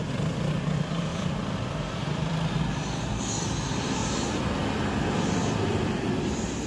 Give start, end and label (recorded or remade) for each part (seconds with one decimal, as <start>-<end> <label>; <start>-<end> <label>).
0.0-4.0 remade; 4.0-5.2 recorded; 5.2-6.7 remade